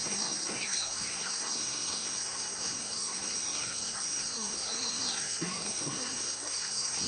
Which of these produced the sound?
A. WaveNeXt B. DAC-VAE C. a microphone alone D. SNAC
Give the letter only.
D